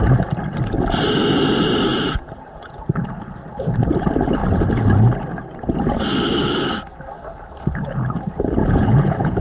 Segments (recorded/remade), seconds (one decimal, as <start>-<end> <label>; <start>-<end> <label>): 0.0-1.9 recorded; 1.9-2.8 remade; 2.8-8.6 recorded; 8.6-9.4 remade